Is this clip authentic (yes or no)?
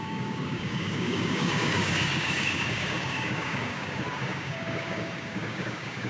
no